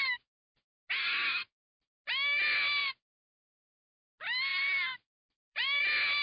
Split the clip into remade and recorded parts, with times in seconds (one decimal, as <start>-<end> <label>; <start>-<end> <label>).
0.0-4.5 recorded; 4.5-5.8 remade; 5.8-6.2 recorded